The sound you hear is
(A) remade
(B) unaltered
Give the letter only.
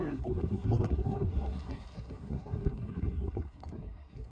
A